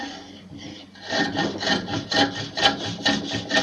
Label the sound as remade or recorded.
recorded